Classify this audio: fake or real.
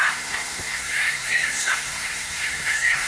fake